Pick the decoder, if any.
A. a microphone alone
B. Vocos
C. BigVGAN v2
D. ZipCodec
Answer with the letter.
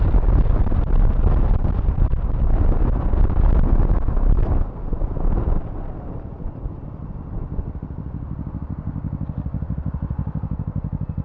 A